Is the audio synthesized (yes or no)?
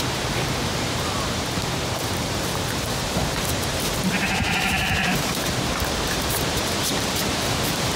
yes